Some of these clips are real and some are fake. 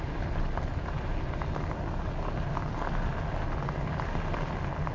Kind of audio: real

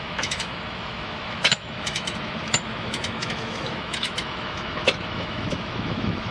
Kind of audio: fake